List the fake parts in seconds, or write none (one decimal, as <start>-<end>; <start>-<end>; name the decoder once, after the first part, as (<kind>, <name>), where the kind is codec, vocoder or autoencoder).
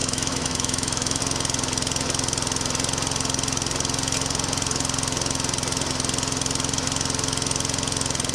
0.0-1.2 (autoencoder, DAC-VAE)